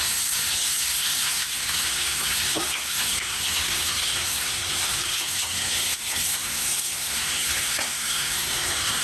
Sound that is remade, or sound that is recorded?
remade